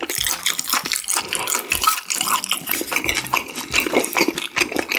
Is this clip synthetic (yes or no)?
no